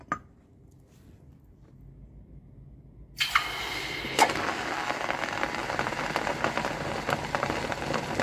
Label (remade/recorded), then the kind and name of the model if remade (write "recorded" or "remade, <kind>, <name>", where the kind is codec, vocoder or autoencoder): recorded